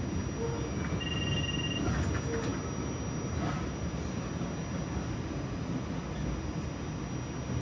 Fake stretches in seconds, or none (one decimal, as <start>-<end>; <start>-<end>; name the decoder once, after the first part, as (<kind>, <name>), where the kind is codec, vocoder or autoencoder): none